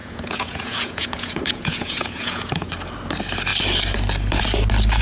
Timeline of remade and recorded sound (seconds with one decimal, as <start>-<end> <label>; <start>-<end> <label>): 0.0-2.7 remade; 2.7-5.0 recorded